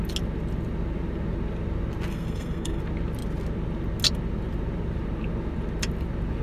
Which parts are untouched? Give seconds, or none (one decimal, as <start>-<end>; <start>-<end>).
0.0-2.1; 2.8-6.4